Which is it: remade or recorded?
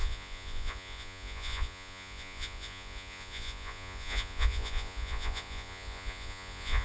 remade